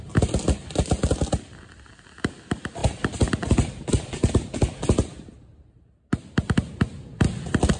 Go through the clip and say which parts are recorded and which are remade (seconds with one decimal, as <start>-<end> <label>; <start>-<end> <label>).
0.0-7.8 recorded